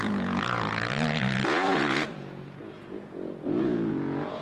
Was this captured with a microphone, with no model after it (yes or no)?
no